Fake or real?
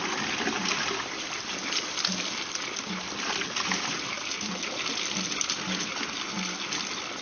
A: real